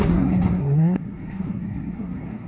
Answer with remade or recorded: remade